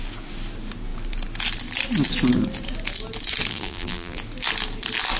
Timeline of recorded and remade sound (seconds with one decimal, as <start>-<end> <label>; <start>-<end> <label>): 0.0-3.5 recorded; 3.5-4.2 remade; 4.2-5.2 recorded